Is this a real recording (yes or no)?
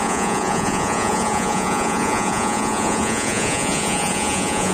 no